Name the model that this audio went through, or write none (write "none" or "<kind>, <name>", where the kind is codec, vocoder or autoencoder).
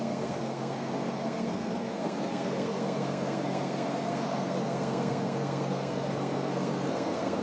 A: codec, SNAC